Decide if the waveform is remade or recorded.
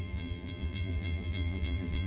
remade